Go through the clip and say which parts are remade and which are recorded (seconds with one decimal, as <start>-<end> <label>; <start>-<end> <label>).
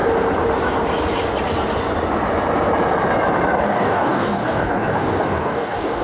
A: 0.0-3.6 recorded; 3.6-6.0 remade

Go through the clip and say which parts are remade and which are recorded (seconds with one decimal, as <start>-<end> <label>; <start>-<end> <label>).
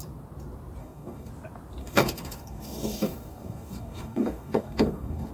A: 0.0-0.8 recorded; 0.8-1.3 remade; 1.3-1.8 recorded; 1.8-5.3 remade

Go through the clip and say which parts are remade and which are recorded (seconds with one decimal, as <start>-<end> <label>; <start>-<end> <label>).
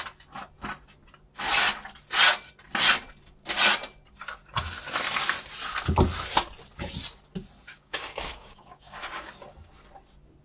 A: 0.0-7.7 recorded; 7.7-9.3 remade; 9.3-10.4 recorded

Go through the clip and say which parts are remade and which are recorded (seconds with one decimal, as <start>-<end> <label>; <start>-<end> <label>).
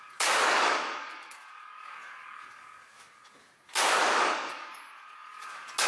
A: 0.0-5.9 remade